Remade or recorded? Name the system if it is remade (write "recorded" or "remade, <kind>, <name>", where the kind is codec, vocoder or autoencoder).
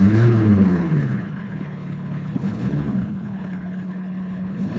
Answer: remade, codec, HILCodec